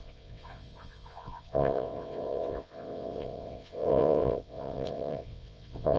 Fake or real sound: fake